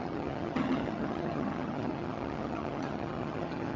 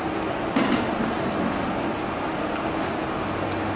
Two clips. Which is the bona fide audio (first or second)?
second